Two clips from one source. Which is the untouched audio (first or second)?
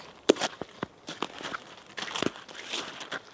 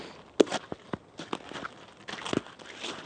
second